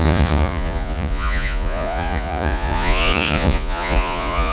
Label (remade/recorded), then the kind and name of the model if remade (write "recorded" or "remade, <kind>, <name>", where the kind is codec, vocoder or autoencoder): remade, vocoder, Vocos